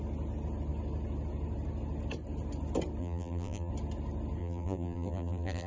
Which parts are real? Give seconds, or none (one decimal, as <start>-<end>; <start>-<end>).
0.0-3.0; 3.7-4.4